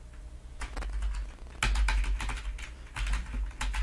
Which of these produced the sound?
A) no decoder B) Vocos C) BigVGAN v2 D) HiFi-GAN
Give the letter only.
A